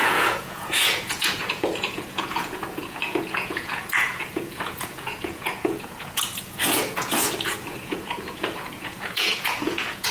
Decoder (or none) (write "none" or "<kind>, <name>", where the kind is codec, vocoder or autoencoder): vocoder, Vocos